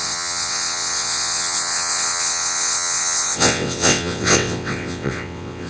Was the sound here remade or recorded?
remade